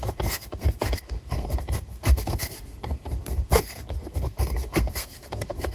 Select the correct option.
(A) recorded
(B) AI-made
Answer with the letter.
B